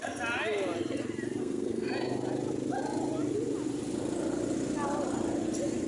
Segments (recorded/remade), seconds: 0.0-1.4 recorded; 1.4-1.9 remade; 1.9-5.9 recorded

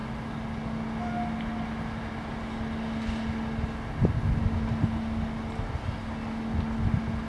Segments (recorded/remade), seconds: 0.0-7.3 recorded